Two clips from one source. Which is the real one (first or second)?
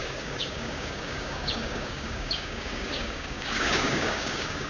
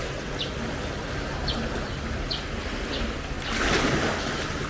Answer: second